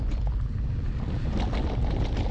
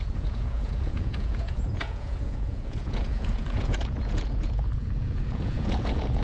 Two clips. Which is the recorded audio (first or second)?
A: first